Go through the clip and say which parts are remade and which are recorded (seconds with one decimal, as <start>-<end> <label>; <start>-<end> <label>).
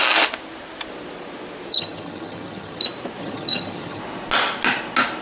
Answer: 0.0-1.7 recorded; 1.7-2.8 remade; 2.8-3.2 recorded; 3.2-4.0 remade; 4.0-5.2 recorded